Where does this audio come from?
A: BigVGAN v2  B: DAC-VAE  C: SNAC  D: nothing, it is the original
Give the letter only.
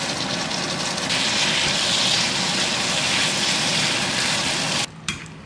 D